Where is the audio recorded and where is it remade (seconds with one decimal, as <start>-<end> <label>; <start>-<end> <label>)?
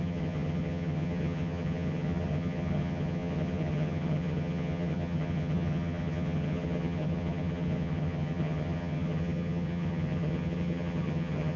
0.0-11.6 remade